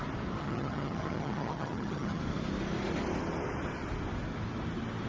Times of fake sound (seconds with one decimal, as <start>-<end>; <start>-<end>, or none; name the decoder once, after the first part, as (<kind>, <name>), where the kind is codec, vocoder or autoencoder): 0.4-2.2 (vocoder, HiFi-GAN)